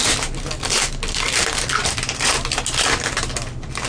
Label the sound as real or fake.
real